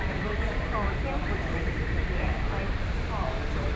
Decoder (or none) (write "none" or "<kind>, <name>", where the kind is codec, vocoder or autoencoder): none